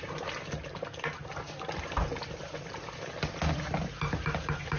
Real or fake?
real